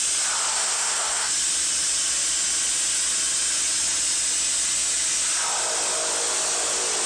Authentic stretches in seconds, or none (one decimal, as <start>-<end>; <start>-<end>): 0.0-0.5; 1.3-7.1